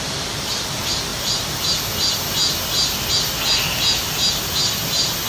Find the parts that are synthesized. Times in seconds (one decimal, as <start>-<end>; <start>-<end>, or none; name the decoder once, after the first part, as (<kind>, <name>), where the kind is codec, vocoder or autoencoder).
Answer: none